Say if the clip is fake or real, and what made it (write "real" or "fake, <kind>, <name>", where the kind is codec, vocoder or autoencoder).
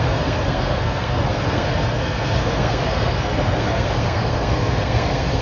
fake, codec, SNAC